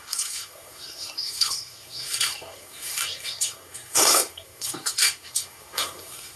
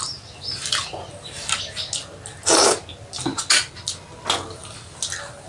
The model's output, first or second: first